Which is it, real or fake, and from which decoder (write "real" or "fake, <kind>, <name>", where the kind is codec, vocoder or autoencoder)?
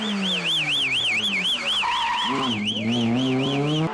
real